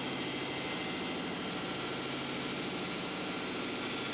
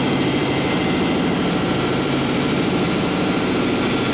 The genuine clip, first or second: first